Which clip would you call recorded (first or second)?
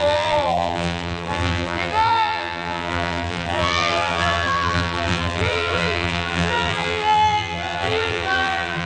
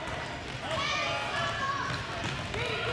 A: second